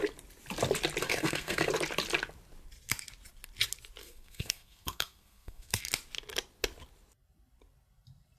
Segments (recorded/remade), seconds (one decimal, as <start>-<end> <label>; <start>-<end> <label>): 0.0-1.0 recorded; 1.0-1.7 remade; 1.7-4.0 recorded; 4.0-5.8 remade; 5.8-8.4 recorded